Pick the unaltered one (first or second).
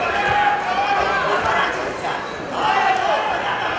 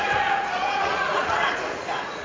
first